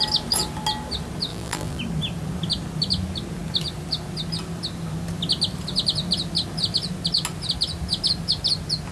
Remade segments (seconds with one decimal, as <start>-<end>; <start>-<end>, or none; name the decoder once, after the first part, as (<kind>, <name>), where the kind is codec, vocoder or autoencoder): 1.3-1.8 (vocoder, BigVGAN v2)